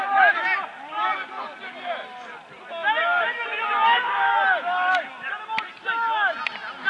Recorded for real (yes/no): yes